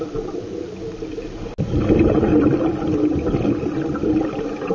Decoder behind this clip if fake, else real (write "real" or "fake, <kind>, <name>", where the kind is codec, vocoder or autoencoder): real